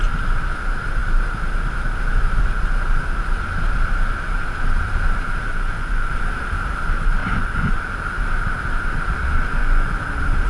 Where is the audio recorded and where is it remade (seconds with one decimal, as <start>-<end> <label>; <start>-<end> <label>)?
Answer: 0.0-5.5 recorded; 5.5-6.1 remade; 6.1-7.2 recorded; 7.2-7.8 remade; 7.8-9.6 recorded; 9.6-10.1 remade; 10.1-10.5 recorded